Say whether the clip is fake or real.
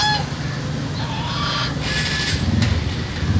real